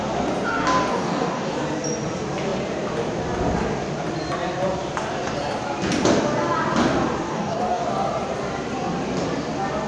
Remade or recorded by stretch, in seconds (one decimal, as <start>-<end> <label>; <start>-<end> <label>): 0.0-0.9 recorded; 0.9-1.5 remade; 1.5-7.3 recorded; 7.3-7.8 remade; 7.8-9.9 recorded